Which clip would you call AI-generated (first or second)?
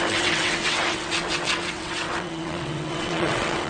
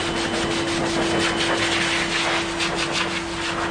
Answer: first